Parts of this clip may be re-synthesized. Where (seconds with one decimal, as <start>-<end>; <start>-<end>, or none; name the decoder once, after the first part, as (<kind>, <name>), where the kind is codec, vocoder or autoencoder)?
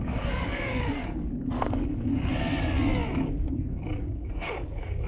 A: 0.0-2.1 (codec, DAC); 3.2-5.1